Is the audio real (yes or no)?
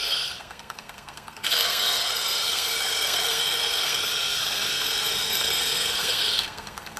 no